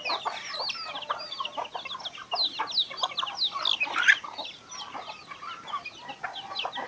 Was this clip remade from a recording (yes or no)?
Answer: no